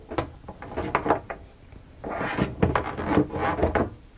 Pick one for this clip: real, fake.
real